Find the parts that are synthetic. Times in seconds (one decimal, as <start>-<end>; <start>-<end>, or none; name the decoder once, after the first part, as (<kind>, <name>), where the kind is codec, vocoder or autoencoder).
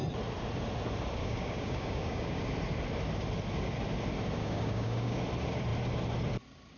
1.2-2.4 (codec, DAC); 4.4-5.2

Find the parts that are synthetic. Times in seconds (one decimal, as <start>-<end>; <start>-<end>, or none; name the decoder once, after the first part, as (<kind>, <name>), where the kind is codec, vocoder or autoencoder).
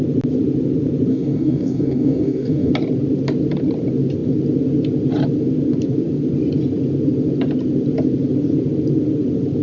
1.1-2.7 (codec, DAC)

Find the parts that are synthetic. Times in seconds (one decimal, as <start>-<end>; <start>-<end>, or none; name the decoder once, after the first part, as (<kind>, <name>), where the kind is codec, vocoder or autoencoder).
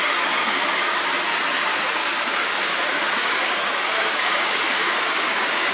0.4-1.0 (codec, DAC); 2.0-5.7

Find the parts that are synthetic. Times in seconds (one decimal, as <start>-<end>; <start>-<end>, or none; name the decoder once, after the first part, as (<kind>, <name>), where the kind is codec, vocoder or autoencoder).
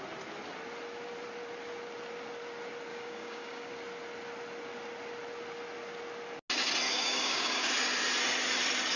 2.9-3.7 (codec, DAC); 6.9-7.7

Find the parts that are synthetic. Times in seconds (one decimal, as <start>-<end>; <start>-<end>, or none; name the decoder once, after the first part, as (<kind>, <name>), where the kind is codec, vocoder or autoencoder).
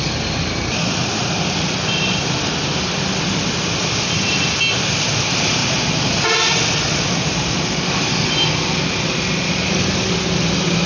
none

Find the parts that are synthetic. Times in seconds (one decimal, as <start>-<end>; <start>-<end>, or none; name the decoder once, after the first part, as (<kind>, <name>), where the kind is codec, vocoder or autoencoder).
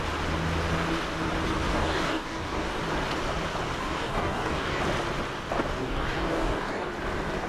1.7-2.8 (codec, DAC); 3.8-4.8; 5.8-6.9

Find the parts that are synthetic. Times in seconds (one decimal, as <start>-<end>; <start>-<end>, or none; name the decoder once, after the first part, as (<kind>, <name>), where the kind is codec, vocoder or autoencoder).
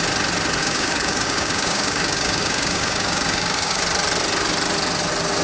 0.6-3.8 (codec, DAC)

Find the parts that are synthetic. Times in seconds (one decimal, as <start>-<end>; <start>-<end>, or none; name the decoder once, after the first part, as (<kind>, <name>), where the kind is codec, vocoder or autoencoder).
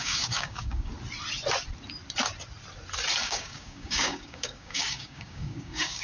0.0-0.9 (codec, DAC); 3.2-6.0